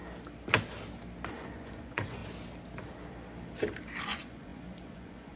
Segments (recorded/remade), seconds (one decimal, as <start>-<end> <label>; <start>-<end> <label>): 0.0-1.3 recorded; 1.3-2.2 remade; 2.2-4.0 recorded; 4.0-5.4 remade